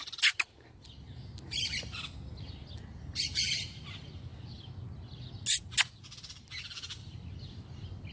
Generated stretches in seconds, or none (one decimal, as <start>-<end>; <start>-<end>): none